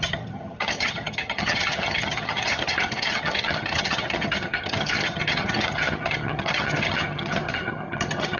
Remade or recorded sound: remade